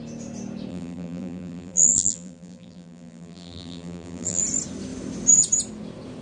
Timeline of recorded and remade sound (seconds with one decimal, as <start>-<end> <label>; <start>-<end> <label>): 0.0-0.7 recorded; 0.7-4.4 remade; 4.4-6.2 recorded

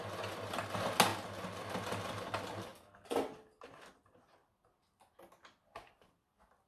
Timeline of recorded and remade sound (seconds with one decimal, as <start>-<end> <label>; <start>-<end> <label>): 0.0-6.7 recorded

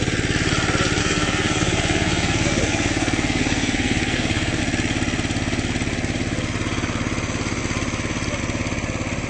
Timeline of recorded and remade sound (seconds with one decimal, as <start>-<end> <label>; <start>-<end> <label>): 0.0-1.0 recorded; 1.0-4.6 remade; 4.6-9.3 recorded

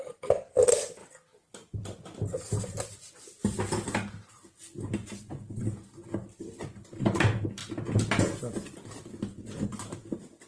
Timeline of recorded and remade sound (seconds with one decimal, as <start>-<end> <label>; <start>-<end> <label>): 0.0-10.5 recorded

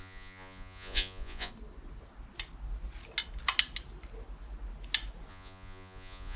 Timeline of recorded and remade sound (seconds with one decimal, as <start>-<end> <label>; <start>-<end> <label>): 0.0-1.5 remade; 1.5-5.3 recorded; 5.3-6.4 remade

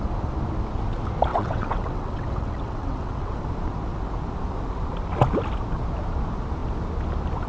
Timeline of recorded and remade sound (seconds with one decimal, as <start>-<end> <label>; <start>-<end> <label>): 0.0-1.3 recorded; 1.3-3.4 remade; 3.4-7.5 recorded